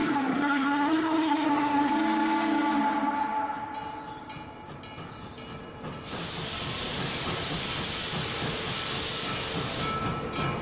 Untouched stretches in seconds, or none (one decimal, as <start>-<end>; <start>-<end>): 1.9-10.6